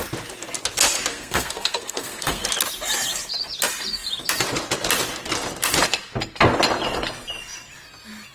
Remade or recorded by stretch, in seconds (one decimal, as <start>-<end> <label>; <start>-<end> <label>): 0.0-1.1 recorded; 1.1-2.5 remade; 2.5-8.3 recorded